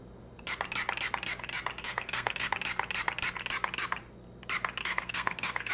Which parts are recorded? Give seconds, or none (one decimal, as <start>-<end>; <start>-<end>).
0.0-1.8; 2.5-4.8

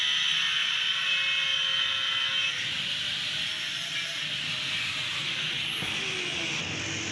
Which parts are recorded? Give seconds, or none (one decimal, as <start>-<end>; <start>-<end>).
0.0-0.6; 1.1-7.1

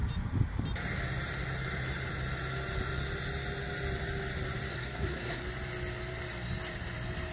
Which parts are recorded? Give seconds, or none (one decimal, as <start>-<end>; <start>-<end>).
0.0-4.7; 5.4-7.3